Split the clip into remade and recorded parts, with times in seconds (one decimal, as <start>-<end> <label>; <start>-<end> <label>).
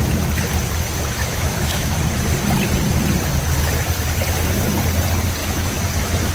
0.0-1.2 recorded; 1.2-2.0 remade; 2.0-5.4 recorded; 5.4-6.3 remade